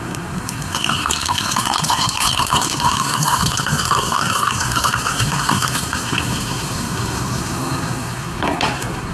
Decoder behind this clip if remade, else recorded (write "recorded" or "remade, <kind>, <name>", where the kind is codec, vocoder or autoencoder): remade, codec, SNAC